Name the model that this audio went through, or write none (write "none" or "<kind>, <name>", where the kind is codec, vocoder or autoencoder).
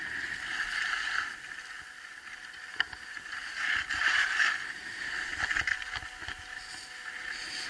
none